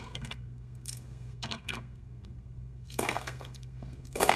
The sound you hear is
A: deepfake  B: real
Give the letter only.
A